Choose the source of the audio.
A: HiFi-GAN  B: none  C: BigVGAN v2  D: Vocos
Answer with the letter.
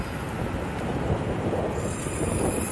B